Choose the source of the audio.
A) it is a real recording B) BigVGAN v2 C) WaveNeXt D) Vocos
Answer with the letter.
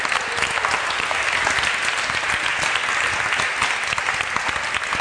A